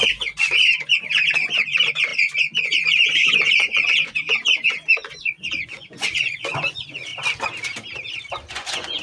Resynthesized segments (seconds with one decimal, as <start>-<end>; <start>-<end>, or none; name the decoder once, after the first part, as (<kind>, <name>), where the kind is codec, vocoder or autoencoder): 0.0-7.1 (vocoder, Vocos); 8.5-9.0